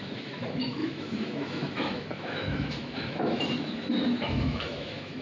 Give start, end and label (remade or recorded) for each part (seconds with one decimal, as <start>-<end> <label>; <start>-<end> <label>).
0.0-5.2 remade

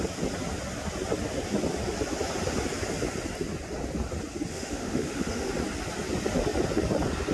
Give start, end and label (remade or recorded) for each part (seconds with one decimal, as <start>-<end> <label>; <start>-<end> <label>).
0.0-4.5 recorded; 4.5-5.5 remade; 5.5-7.3 recorded

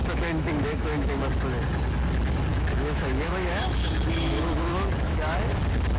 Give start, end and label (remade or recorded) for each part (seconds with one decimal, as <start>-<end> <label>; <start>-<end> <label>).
0.0-1.2 remade; 1.2-2.5 recorded; 2.5-5.6 remade; 5.6-6.0 recorded

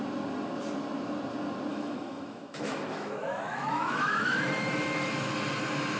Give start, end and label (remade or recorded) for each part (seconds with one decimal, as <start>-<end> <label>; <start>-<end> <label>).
0.0-1.7 recorded; 1.7-5.3 remade; 5.3-6.0 recorded

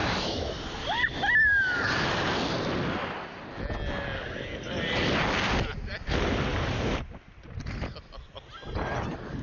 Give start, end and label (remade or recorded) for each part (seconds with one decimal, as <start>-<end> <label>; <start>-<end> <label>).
0.0-0.6 remade; 0.6-9.4 recorded

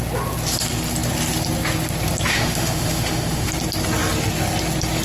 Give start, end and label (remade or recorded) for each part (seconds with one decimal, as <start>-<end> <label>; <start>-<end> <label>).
0.0-2.3 recorded; 2.3-3.5 remade; 3.5-5.0 recorded

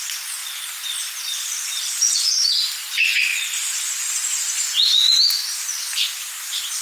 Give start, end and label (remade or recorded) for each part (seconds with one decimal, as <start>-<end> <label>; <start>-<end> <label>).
0.0-6.8 recorded

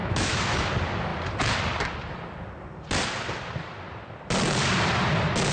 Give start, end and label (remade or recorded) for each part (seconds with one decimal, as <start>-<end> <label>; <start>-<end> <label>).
0.0-0.7 remade; 0.7-5.5 recorded